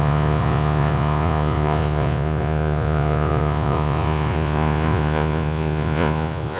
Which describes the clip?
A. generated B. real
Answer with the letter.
A